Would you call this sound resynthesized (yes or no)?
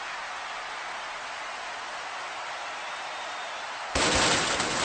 no